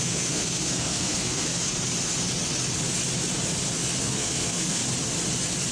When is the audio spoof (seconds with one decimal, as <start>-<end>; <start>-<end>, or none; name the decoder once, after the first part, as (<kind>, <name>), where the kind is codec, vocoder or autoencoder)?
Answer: 0.0-1.5 (codec, SNAC); 4.0-4.8